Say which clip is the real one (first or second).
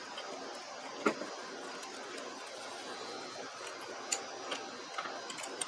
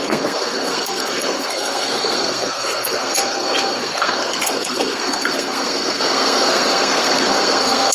first